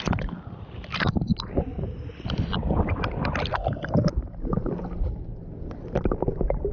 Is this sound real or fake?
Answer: real